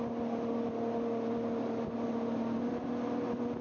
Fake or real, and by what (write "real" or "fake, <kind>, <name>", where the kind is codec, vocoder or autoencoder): real